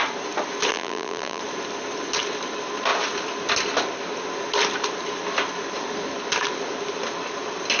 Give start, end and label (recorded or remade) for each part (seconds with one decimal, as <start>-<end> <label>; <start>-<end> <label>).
0.0-0.7 recorded; 0.7-1.4 remade; 1.4-7.8 recorded